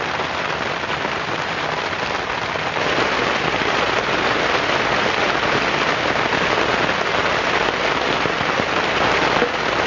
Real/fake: real